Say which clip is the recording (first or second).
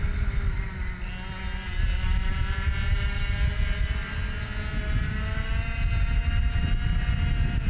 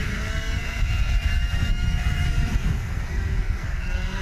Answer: first